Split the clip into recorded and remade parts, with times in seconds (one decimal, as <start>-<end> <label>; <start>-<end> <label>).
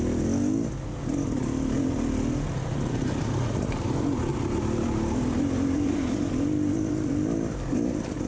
0.0-4.3 recorded; 4.3-7.7 remade; 7.7-8.3 recorded